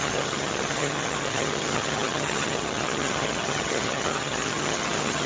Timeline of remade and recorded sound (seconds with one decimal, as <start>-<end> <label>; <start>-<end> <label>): 0.0-5.3 remade